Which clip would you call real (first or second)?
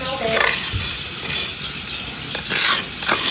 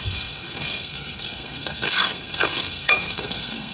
first